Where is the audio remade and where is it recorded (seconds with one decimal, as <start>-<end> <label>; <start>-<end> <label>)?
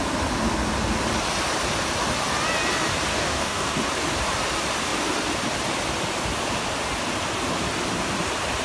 0.0-3.1 recorded; 3.1-3.8 remade; 3.8-8.6 recorded